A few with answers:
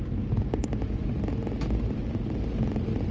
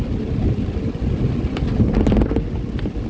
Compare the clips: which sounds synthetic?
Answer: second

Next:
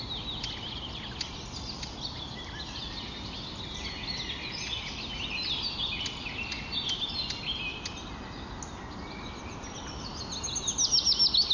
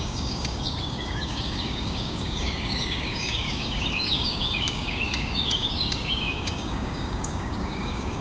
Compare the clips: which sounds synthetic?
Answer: second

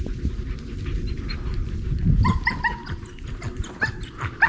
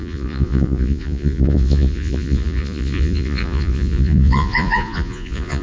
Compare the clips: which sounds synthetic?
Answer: second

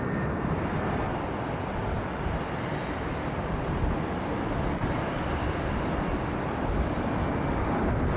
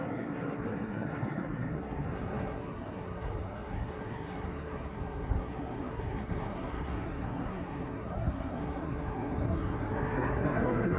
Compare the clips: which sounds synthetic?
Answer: second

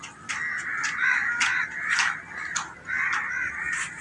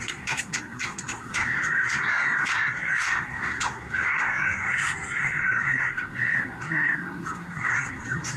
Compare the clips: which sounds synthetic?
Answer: second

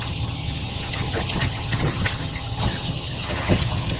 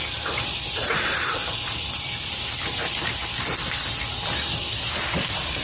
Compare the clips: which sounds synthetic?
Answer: first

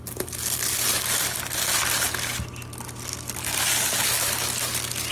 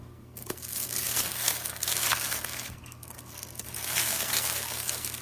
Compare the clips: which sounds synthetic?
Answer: second